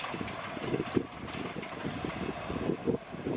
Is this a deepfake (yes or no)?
no